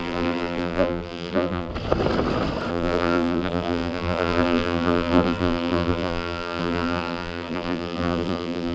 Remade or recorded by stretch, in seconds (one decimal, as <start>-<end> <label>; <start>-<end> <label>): 0.0-1.7 remade; 1.7-2.7 recorded; 2.7-8.7 remade